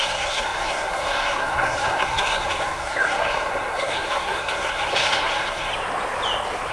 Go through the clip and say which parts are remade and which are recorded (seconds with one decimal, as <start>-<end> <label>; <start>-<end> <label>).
0.0-5.7 remade; 5.7-6.7 recorded